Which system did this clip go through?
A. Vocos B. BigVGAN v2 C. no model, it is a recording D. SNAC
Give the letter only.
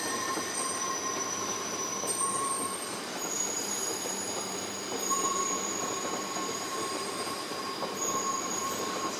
B